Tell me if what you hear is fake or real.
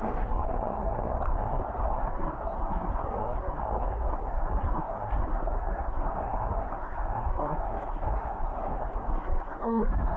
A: fake